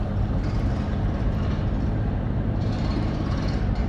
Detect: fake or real fake